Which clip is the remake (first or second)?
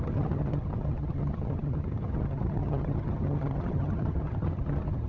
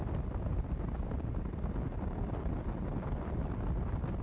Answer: first